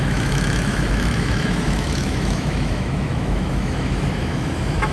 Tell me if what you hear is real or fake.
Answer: fake